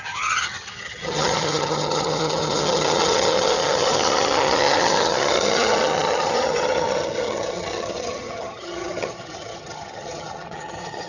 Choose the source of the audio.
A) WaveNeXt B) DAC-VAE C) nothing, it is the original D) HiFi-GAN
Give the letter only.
D